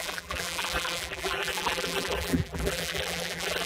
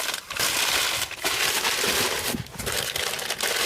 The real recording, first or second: second